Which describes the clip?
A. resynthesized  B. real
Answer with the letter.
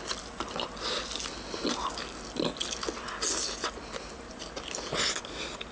B